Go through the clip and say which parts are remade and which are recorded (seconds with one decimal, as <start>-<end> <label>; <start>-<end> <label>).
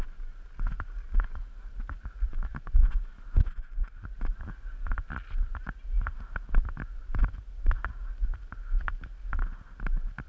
0.0-2.3 recorded; 2.3-3.0 remade; 3.0-10.3 recorded